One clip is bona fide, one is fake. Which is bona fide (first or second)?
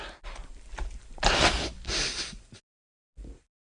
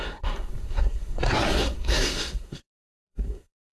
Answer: first